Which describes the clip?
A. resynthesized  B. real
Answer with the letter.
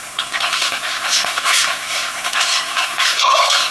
A